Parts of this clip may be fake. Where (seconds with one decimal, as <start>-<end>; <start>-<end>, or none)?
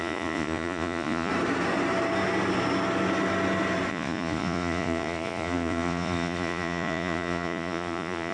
0.0-1.3; 3.9-8.3